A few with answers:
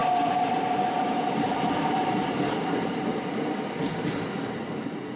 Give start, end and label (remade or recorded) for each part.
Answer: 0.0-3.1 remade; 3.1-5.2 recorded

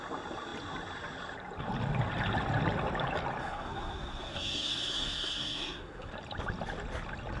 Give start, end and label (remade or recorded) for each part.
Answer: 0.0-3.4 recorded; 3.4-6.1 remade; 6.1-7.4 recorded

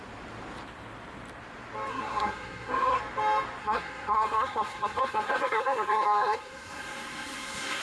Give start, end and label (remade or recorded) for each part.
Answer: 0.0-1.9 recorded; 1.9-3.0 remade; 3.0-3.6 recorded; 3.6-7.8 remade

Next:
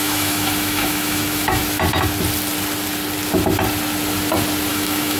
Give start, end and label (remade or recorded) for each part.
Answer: 0.0-1.6 remade; 1.6-4.7 recorded; 4.7-5.2 remade

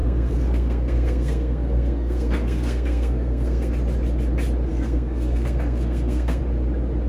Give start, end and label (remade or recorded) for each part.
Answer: 0.0-3.7 remade; 3.7-4.7 recorded; 4.7-6.4 remade; 6.4-7.1 recorded

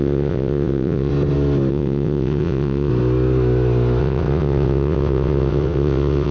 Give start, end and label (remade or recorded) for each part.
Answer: 0.0-1.1 remade; 1.1-1.7 recorded; 1.7-2.9 remade; 2.9-4.0 recorded; 4.0-6.3 remade

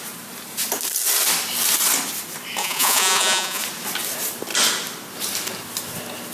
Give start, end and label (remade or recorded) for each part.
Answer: 0.0-2.6 recorded; 2.6-3.6 remade; 3.6-6.3 recorded

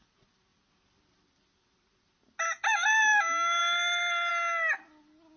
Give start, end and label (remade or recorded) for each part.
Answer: 0.0-5.4 recorded